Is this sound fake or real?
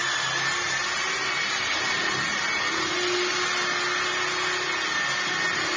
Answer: real